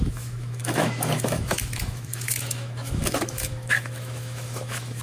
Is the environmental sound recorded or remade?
remade